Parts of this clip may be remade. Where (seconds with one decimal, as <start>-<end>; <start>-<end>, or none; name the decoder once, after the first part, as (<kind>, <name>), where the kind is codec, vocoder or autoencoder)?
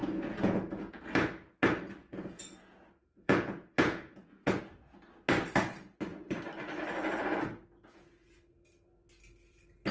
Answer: 0.0-1.0 (vocoder, Vocos); 2.0-4.6